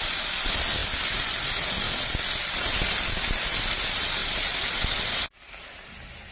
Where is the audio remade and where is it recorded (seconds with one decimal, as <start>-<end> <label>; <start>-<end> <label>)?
0.0-4.2 recorded; 4.2-4.8 remade; 4.8-6.3 recorded